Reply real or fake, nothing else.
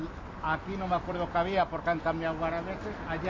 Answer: real